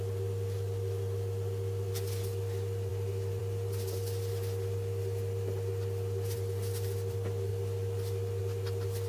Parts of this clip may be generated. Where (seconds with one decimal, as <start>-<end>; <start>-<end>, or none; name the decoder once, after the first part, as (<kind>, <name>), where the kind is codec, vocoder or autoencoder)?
none